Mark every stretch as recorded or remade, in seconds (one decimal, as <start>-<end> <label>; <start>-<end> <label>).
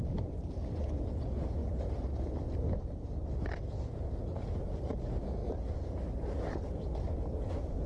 0.0-7.9 recorded